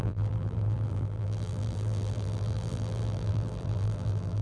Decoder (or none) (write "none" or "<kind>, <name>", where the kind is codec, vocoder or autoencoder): vocoder, BigVGAN v2